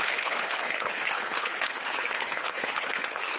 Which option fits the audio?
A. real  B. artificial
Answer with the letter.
B